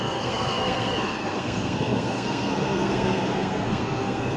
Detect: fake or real fake